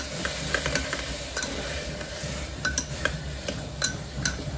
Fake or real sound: real